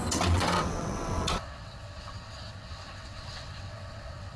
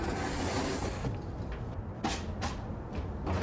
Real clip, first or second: second